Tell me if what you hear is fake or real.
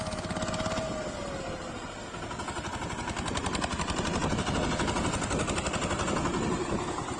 real